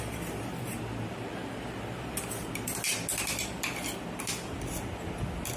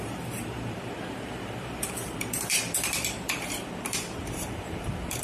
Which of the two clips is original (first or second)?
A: first